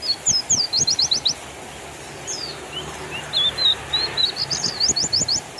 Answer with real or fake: real